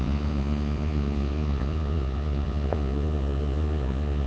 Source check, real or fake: fake